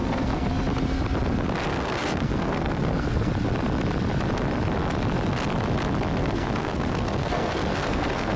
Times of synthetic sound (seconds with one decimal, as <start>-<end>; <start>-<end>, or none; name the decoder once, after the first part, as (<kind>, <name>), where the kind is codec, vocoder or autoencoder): 0.0-0.5 (codec, SNAC); 1.7-3.3; 6.2-8.4